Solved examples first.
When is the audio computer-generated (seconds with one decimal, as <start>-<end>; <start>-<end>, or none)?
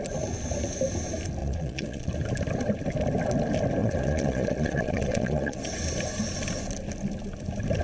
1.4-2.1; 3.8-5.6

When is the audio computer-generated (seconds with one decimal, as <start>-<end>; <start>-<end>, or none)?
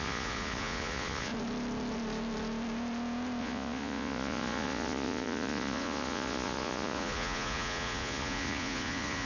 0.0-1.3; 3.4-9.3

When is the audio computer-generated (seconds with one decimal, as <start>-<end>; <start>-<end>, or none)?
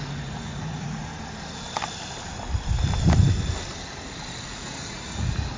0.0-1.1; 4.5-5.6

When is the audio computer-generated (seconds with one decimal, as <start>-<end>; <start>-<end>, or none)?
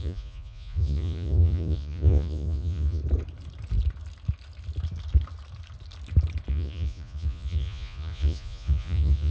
0.0-3.0; 6.5-9.3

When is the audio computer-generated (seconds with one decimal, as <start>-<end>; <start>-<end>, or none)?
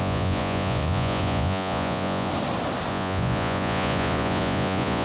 0.0-2.3; 2.9-5.0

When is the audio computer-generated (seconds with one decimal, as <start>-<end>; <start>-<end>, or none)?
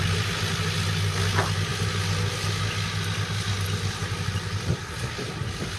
none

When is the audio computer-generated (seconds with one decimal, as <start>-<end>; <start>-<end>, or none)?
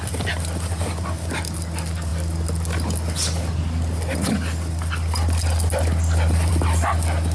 none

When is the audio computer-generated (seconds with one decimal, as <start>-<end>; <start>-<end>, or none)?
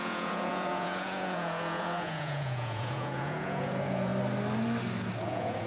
0.0-4.1; 5.2-5.7